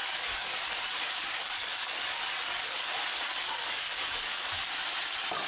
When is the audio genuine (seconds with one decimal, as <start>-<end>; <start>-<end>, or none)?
2.9-3.4; 4.4-5.5